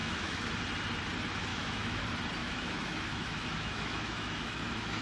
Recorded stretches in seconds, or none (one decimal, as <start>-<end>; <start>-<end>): 0.5-1.5; 2.0-2.4